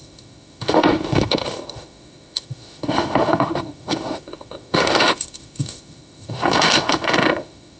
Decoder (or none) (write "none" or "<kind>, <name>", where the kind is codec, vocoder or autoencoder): autoencoder, DAC-VAE